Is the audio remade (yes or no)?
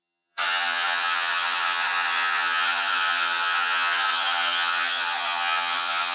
yes